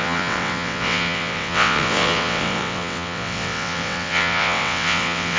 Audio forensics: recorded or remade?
remade